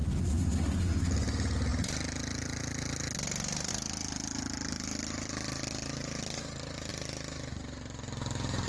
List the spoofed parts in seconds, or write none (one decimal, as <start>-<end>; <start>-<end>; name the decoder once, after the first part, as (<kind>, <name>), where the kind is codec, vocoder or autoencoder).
0.0-1.1 (codec, SNAC)

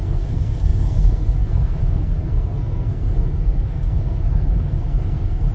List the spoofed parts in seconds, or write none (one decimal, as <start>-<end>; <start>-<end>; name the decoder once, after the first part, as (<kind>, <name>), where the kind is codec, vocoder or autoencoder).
0.0-5.5 (codec, SNAC)

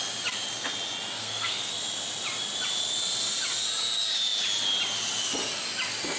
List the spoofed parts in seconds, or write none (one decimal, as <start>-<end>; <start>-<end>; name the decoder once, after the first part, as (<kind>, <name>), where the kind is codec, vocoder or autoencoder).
1.2-1.7 (codec, SNAC)

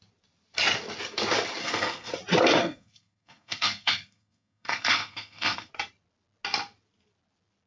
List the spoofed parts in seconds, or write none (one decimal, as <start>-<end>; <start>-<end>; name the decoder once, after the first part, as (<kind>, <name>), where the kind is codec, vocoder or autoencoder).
1.6-2.1 (codec, SNAC); 2.6-5.7

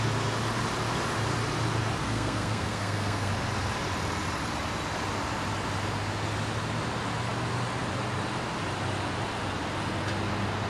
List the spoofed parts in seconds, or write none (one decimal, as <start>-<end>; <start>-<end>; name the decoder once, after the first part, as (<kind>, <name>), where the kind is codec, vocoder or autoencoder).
2.0-3.3 (codec, SNAC)